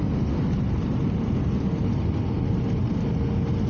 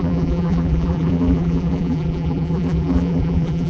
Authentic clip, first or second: first